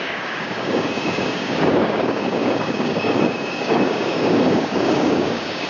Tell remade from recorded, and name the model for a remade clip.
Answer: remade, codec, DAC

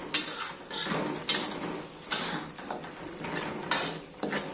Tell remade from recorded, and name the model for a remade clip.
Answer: recorded